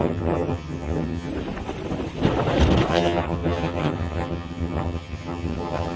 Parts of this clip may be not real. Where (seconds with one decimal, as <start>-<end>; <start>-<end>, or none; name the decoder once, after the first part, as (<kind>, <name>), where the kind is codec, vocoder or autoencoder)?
0.0-1.3 (vocoder, HiFi-GAN); 2.9-6.0